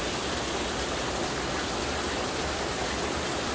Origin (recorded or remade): recorded